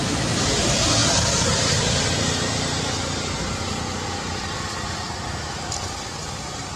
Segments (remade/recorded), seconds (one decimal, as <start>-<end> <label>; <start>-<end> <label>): 0.0-6.8 recorded